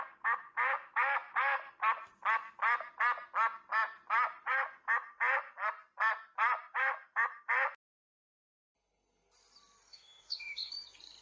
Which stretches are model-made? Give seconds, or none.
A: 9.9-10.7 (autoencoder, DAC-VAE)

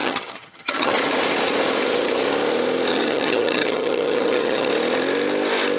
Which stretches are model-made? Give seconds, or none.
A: 0.0-0.9 (vocoder, HiFi-GAN); 2.9-4.7

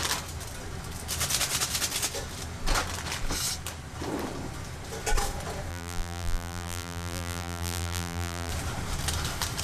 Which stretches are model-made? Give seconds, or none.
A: 5.7-8.5 (vocoder, BigVGAN v2)

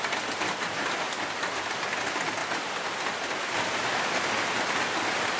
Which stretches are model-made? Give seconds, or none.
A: none

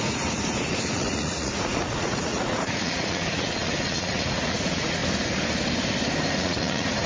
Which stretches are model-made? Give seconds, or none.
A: 0.0-5.0 (vocoder, Vocos); 6.3-7.1

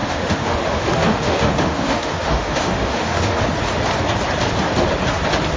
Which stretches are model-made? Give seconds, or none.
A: 0.0-3.4 (autoencoder, DAC-VAE)